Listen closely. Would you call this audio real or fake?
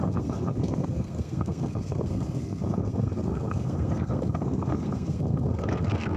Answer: fake